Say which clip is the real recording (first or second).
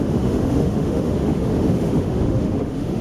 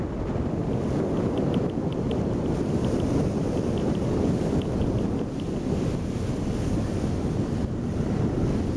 second